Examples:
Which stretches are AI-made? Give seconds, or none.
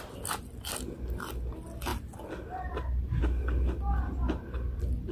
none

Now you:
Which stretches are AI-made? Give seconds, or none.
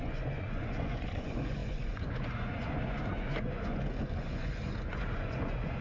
0.0-5.8 (vocoder, Vocos)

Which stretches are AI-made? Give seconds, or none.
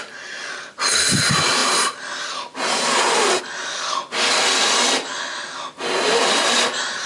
none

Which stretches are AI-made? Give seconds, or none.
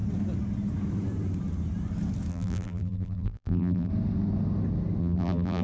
2.3-3.9 (vocoder, BigVGAN v2); 5.0-5.6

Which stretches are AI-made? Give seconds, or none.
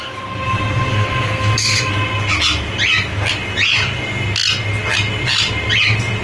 0.9-1.9 (codec, SNAC)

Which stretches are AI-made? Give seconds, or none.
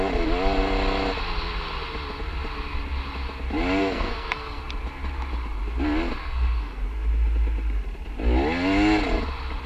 3.8-4.6 (codec, SNAC); 6.2-6.8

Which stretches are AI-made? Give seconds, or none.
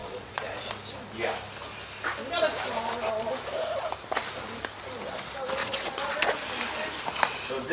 0.0-0.7 (vocoder, Vocos); 5.6-6.4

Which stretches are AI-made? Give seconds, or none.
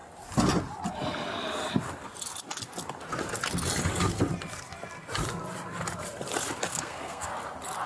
6.7-7.3 (codec, SNAC)